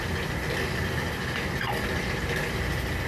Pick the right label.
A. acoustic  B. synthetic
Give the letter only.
A